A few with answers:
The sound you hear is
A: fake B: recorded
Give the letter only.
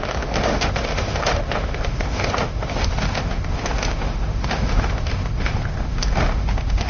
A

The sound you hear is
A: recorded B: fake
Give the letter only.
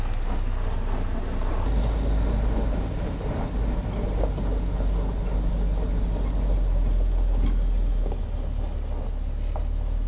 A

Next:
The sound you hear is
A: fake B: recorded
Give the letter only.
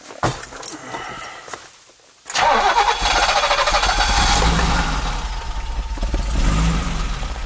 B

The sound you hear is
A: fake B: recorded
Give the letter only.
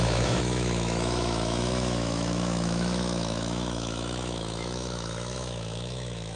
A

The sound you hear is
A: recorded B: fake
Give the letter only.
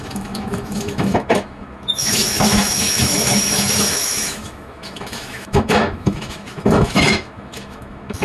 B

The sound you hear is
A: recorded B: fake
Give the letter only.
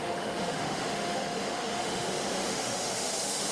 B